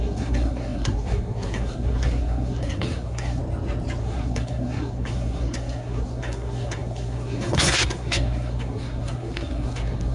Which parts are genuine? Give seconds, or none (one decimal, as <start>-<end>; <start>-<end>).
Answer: 3.4-4.0